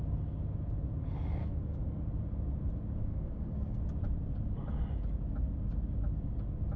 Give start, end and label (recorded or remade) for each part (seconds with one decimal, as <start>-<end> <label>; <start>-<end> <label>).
0.0-1.4 recorded; 1.4-2.0 remade; 2.0-3.1 recorded; 3.1-3.8 remade; 3.8-6.8 recorded